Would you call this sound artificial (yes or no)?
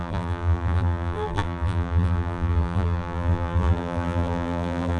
yes